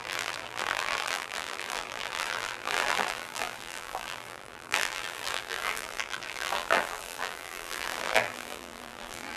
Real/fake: fake